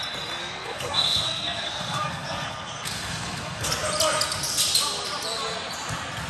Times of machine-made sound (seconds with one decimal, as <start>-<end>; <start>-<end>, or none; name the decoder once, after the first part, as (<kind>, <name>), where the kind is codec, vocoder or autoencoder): 0.4-3.7 (codec, SNAC)